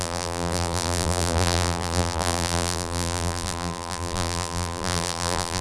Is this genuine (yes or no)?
no